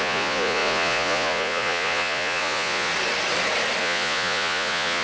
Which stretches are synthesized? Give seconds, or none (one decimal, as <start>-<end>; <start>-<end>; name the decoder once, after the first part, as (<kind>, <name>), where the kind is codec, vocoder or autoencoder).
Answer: 0.0-2.9 (vocoder, Vocos); 3.8-5.0